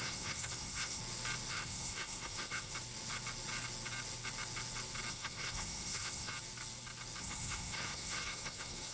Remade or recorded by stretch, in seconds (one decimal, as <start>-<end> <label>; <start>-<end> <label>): 0.0-1.0 remade; 1.0-1.5 recorded; 1.5-2.7 remade; 2.7-5.1 recorded; 5.1-6.3 remade; 6.3-7.2 recorded; 7.2-8.9 remade

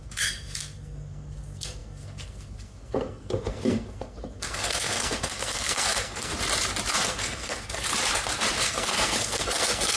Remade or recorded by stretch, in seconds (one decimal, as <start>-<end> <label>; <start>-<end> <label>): 0.0-6.3 remade; 6.3-6.9 recorded; 6.9-7.9 remade; 7.9-8.6 recorded; 8.6-10.0 remade

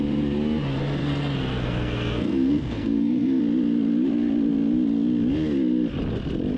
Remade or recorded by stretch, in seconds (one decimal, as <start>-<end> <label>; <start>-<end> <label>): 0.0-1.0 recorded; 1.0-3.4 remade; 3.4-6.6 recorded